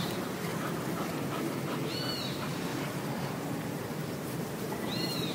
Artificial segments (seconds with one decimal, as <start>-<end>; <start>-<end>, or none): 0.0-0.5; 1.9-5.3